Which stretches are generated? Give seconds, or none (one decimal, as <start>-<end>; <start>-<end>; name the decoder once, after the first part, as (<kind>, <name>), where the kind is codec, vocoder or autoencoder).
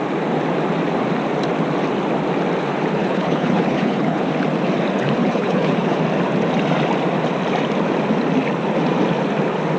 3.0-4.3 (codec, HILCodec); 5.2-6.0